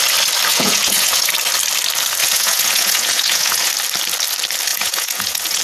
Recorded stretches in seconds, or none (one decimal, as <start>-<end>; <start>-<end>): 0.0-0.5; 1.3-2.2; 3.7-4.7